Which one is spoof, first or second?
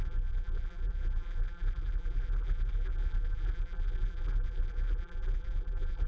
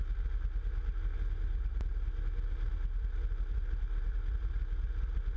first